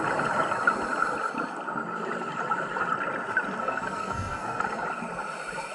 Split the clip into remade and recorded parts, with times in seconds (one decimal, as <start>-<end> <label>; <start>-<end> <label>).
0.0-3.6 recorded; 3.6-4.6 remade; 4.6-5.7 recorded